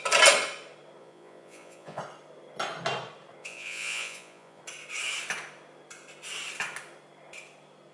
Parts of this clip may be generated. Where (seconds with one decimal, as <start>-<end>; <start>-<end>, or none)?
1.0-2.0; 3.4-4.6